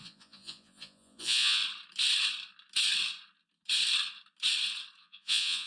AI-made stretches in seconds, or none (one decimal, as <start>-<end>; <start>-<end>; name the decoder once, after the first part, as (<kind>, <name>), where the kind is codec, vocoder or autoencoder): 0.0-1.6 (vocoder, Vocos); 5.0-5.7